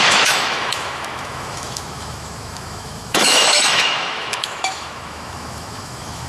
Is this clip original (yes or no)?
no